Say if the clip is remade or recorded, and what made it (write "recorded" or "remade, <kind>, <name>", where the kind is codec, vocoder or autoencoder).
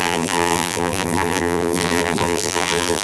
remade, vocoder, BigVGAN v2